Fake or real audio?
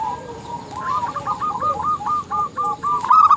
fake